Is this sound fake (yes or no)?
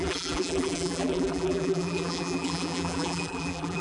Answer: yes